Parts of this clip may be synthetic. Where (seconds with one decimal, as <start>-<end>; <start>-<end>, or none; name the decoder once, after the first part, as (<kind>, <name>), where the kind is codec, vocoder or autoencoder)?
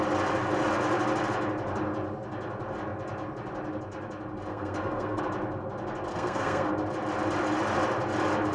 4.5-5.2 (codec, SNAC); 6.1-6.7